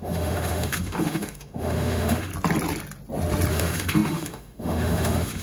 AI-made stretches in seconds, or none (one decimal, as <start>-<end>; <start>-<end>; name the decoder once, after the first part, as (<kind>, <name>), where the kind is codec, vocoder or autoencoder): 0.0-2.3 (autoencoder, DAC-VAE); 3.5-5.4